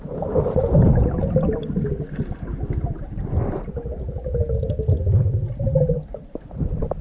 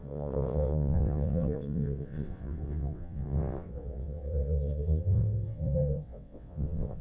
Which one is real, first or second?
first